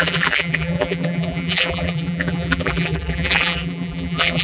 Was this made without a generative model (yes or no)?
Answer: no